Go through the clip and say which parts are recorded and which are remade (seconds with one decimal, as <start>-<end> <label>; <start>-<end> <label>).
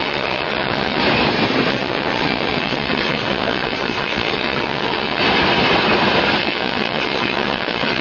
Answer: 0.0-1.0 remade; 1.0-1.7 recorded; 1.7-5.2 remade; 5.2-6.4 recorded; 6.4-8.0 remade